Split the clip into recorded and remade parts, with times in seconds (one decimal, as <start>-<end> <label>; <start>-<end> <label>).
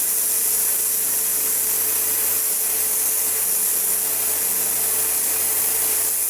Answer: 0.0-6.3 recorded